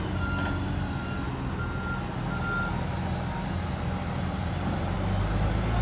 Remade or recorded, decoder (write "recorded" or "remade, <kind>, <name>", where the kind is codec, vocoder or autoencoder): recorded